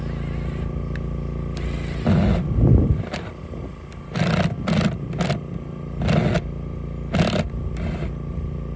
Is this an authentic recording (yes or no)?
yes